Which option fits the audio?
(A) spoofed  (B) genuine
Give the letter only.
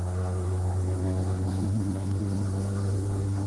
A